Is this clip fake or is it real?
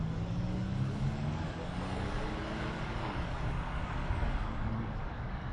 fake